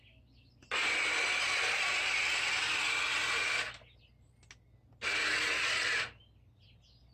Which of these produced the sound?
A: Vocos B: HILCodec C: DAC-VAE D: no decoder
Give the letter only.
D